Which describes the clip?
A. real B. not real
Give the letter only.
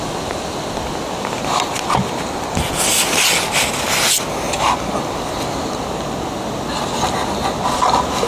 A